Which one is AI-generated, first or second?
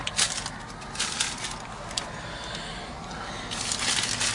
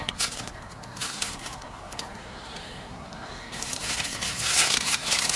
second